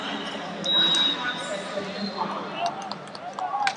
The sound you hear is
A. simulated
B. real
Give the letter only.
B